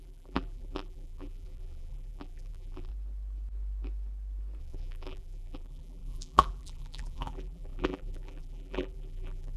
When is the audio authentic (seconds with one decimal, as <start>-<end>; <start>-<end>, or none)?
2.9-4.6